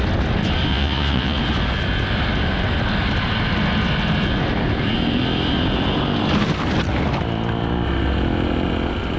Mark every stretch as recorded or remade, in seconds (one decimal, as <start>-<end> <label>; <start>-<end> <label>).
0.0-0.7 recorded; 0.7-1.4 remade; 1.4-9.2 recorded